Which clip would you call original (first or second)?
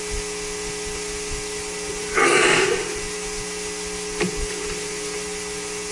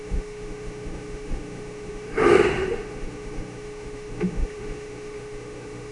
first